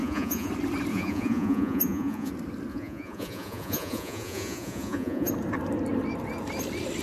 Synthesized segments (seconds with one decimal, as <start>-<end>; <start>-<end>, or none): 0.0-0.5; 0.9-2.3; 2.7-5.3